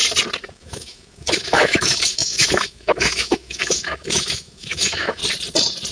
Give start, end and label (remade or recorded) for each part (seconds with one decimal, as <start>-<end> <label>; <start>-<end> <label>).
0.0-0.5 recorded; 0.5-5.2 remade; 5.2-5.9 recorded